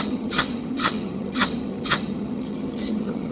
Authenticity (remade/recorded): remade